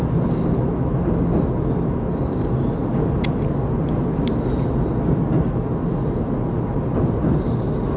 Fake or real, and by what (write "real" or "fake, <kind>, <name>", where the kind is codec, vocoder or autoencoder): real